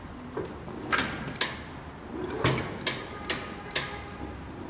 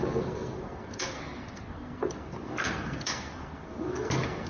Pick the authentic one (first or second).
first